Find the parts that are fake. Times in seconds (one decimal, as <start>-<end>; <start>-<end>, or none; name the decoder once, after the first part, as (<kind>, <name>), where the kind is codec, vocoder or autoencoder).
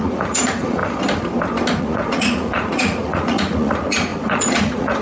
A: 0.0-0.8 (vocoder, Vocos); 1.8-5.0